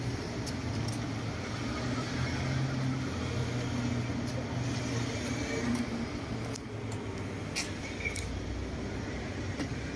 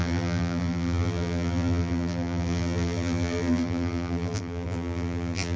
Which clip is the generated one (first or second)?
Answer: second